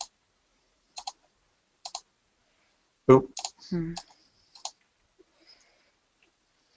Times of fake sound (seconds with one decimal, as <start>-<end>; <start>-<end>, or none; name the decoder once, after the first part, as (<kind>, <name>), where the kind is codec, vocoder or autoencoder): 0.5-1.1 (vocoder, Vocos)